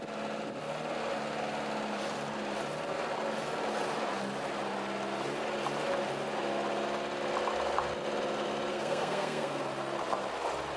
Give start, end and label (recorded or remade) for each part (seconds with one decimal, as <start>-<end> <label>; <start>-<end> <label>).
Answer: 0.0-8.7 recorded; 8.7-9.6 remade; 9.6-10.8 recorded